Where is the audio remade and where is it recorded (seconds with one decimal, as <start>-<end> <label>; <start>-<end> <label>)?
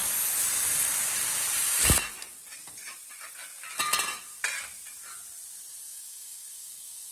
0.0-5.9 recorded; 5.9-7.1 remade